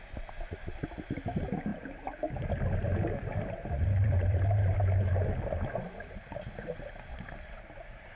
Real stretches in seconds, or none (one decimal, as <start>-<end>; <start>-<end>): 0.0-1.7; 2.4-4.0; 5.1-7.1